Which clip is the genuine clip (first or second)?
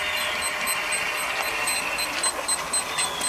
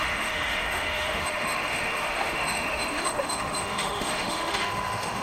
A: first